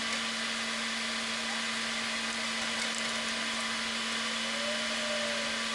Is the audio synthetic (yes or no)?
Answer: no